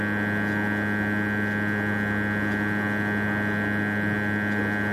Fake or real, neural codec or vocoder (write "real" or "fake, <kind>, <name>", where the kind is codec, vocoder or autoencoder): real